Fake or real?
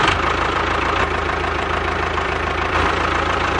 fake